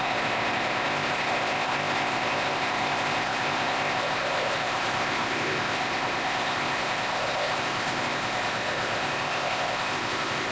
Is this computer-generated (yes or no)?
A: yes